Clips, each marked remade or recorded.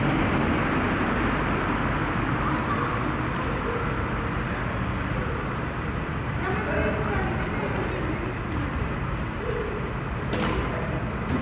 recorded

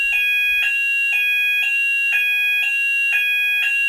recorded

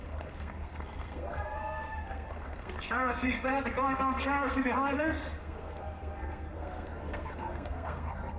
remade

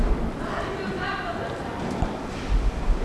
recorded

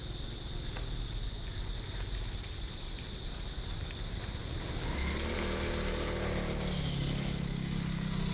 recorded